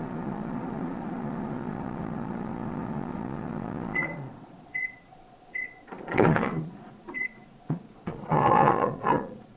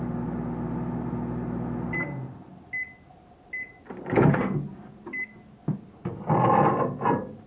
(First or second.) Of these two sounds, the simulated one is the first